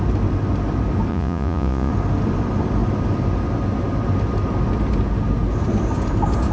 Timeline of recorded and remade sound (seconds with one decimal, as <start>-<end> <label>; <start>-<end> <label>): 0.0-1.1 recorded; 1.1-1.9 remade; 1.9-6.5 recorded